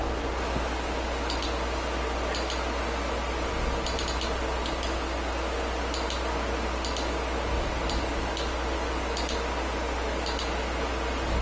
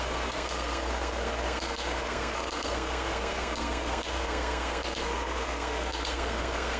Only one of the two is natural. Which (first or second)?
first